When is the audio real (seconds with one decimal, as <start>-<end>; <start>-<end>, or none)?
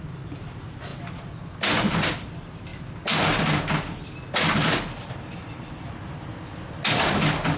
0.0-7.6